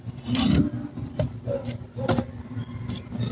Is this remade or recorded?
recorded